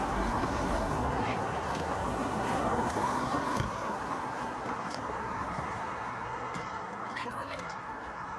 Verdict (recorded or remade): remade